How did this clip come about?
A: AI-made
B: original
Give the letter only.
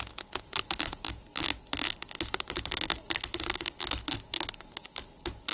B